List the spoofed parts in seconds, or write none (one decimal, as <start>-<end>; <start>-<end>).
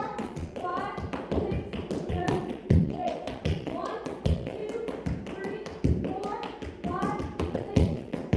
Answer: 0.0-0.7; 2.1-4.6; 7.4-8.4